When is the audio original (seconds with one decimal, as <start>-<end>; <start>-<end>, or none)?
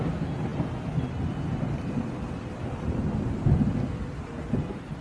0.0-5.0